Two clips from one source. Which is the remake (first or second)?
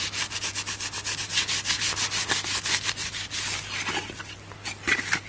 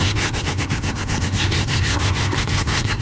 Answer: second